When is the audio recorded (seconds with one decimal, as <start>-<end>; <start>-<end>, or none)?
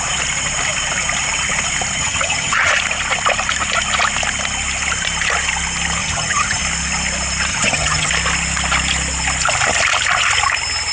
0.0-2.0; 2.7-6.0; 6.6-7.5; 8.1-10.9